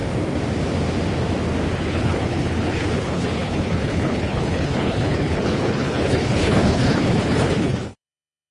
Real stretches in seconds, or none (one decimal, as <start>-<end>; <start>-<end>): 0.0-1.8